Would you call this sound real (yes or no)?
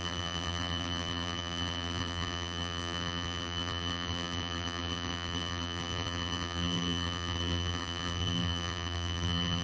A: no